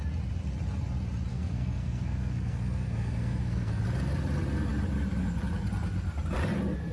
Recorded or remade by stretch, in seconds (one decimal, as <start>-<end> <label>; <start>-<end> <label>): 0.0-1.3 recorded; 1.3-3.8 remade; 3.8-6.9 recorded